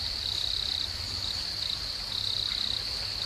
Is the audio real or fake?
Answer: real